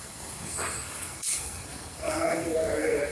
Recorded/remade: remade